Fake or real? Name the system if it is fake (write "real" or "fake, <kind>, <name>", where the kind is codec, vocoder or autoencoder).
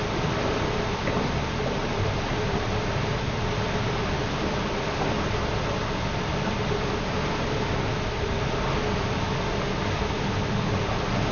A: real